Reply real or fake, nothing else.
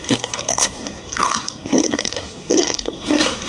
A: fake